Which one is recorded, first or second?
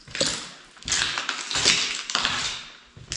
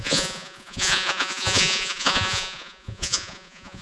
first